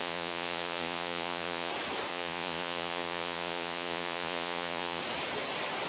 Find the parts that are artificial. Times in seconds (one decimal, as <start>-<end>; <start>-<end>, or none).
0.0-1.7; 2.1-5.0